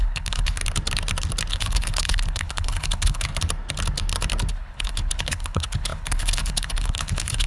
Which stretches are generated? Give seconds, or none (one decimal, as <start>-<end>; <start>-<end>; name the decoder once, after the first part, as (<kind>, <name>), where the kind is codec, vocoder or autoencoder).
0.0-0.6 (codec, HILCodec); 1.5-3.3; 4.5-7.5